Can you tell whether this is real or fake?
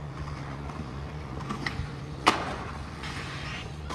fake